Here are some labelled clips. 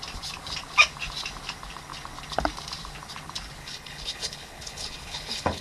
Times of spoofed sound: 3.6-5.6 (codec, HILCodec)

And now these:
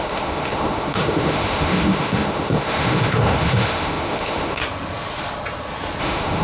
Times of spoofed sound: 0.0-4.6 (autoencoder, DAC-VAE); 6.0-6.4